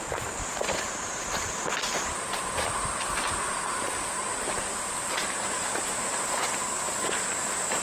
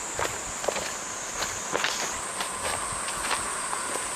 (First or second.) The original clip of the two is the second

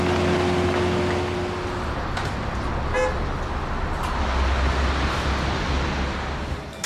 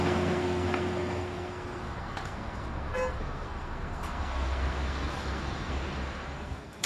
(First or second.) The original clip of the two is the first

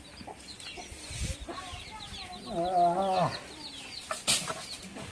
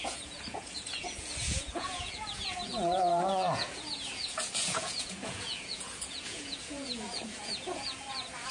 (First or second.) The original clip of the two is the first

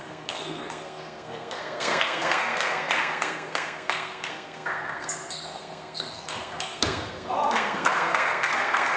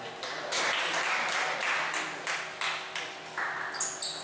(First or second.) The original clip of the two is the second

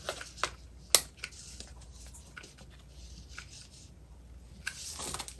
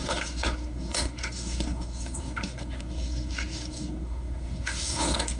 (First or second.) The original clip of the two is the first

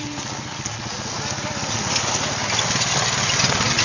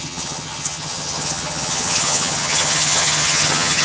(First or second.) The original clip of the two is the first